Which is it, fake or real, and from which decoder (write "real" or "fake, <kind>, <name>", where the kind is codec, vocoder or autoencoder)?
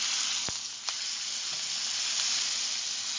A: real